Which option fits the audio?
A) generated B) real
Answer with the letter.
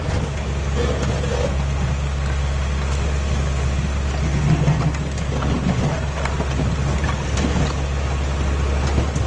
B